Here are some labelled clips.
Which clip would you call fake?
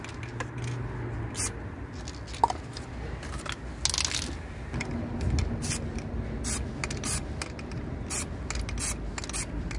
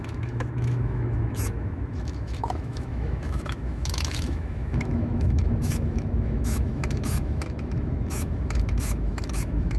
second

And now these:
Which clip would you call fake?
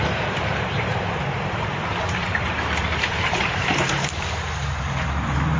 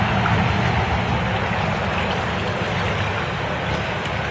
first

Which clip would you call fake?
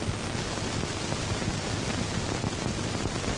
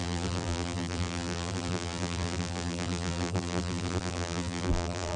second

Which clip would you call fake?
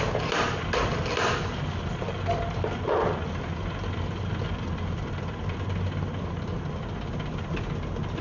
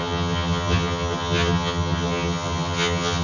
second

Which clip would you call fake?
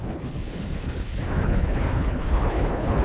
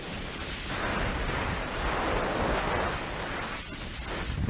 first